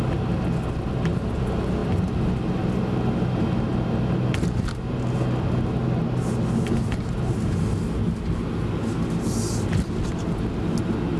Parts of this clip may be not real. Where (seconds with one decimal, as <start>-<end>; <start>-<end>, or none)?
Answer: none